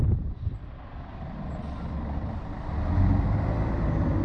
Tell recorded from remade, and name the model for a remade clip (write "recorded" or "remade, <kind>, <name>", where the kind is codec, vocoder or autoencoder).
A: recorded